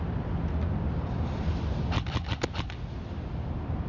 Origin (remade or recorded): recorded